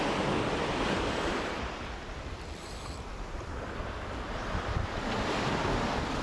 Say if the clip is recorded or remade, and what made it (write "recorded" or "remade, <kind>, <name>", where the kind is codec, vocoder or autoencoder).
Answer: remade, vocoder, BigVGAN v2